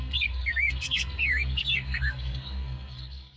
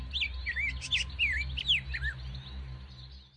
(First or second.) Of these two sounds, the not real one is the first